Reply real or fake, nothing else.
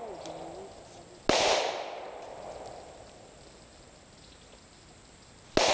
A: real